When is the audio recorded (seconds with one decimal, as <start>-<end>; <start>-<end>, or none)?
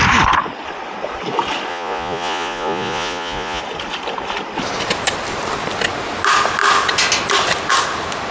0.0-1.7; 3.6-8.3